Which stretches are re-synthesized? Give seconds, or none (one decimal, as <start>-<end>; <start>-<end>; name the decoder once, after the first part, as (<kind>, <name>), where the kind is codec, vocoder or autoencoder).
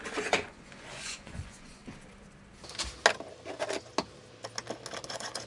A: 0.0-1.8 (vocoder, Vocos); 5.1-5.5